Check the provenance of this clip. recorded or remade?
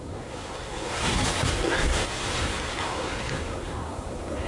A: remade